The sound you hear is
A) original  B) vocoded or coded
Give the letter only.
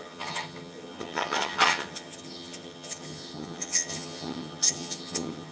B